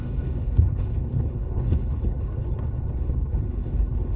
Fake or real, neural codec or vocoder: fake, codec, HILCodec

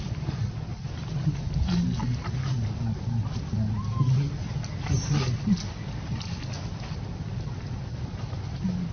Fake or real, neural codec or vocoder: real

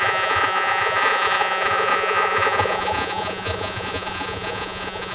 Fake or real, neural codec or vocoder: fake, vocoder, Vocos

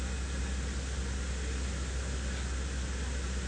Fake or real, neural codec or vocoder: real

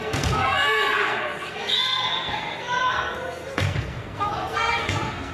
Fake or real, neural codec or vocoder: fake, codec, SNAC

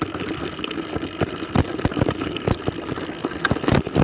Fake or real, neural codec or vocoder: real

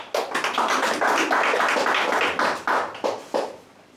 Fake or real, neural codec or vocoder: real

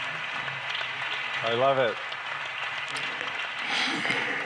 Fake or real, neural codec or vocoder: real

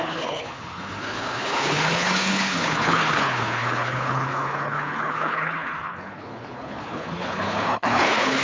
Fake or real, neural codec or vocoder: fake, codec, HILCodec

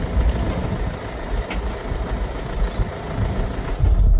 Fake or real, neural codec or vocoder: real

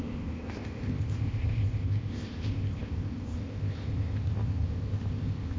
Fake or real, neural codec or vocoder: fake, codec, ZipCodec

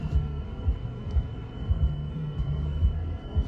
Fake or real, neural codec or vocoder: fake, codec, SNAC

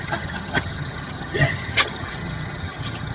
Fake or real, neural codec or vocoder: fake, vocoder, HiFi-GAN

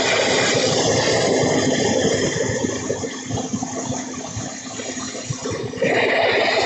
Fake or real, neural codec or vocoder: real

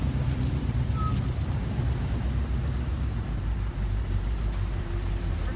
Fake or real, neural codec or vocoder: fake, vocoder, BigVGAN v2